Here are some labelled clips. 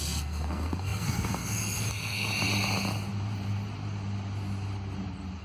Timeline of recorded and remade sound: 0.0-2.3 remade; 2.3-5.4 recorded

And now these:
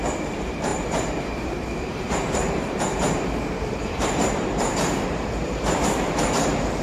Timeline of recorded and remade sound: 0.0-6.8 remade

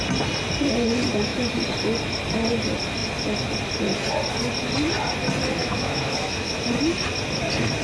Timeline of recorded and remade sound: 0.0-5.6 recorded; 5.6-6.6 remade; 6.6-7.8 recorded

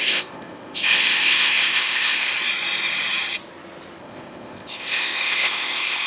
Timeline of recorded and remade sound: 0.0-2.3 remade; 2.3-4.0 recorded; 4.0-6.1 remade